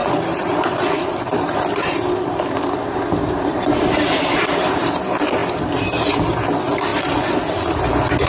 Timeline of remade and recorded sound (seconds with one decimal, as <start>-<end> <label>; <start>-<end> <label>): 0.0-5.0 remade; 5.0-5.4 recorded; 5.4-6.0 remade; 6.0-8.3 recorded